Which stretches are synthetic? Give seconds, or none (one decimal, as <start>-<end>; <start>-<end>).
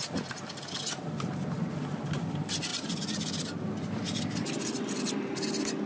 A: none